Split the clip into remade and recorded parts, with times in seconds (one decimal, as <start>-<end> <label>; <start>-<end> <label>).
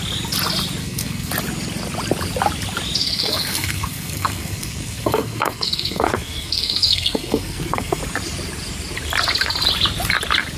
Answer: 0.0-0.8 recorded; 0.8-1.3 remade; 1.3-3.0 recorded; 3.0-8.0 remade; 8.0-10.6 recorded